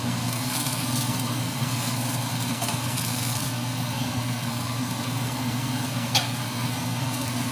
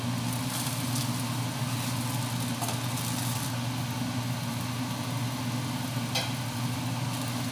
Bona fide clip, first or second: second